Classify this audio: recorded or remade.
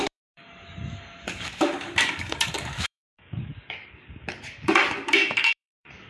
remade